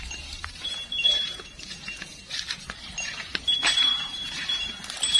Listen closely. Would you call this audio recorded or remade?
remade